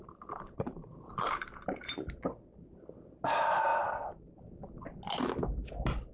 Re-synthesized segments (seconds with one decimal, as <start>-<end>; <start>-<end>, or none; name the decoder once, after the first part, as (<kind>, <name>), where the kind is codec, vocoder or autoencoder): 0.0-1.9 (vocoder, BigVGAN v2)